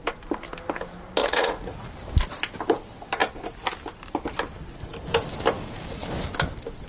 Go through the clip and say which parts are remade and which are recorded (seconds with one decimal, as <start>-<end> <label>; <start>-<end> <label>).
0.0-1.2 recorded; 1.2-1.9 remade; 1.9-6.9 recorded